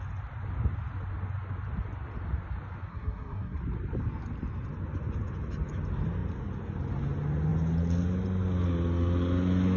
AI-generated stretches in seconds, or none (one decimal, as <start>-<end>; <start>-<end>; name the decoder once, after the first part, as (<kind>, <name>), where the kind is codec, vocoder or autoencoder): 2.9-3.6 (codec, SNAC)

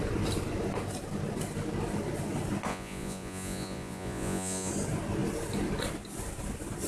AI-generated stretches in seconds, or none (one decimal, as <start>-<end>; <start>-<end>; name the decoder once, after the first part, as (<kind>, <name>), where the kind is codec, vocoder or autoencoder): 2.7-4.7 (vocoder, Vocos)

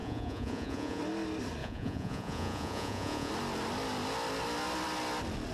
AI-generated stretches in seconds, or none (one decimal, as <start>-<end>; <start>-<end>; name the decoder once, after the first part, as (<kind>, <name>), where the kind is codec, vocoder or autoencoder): 0.0-1.0 (vocoder, Vocos); 1.6-3.3